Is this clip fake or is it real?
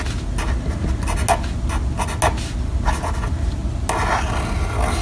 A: real